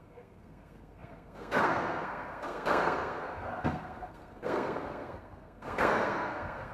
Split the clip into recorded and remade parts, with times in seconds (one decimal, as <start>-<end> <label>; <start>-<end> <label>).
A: 0.0-6.7 remade